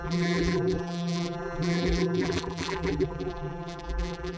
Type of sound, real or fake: fake